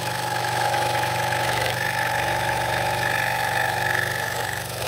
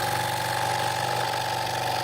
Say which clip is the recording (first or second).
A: second